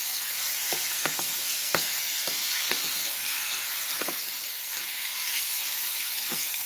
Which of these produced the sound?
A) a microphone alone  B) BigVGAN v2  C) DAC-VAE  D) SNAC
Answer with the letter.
D